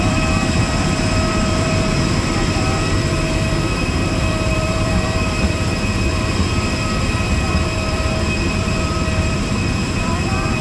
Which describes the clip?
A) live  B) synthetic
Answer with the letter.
B